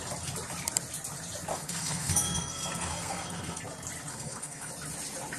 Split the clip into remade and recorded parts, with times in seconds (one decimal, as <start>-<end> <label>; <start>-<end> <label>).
0.0-1.5 recorded; 1.5-3.6 remade; 3.6-4.1 recorded; 4.1-4.7 remade; 4.7-5.4 recorded